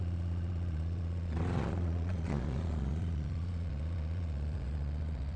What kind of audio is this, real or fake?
fake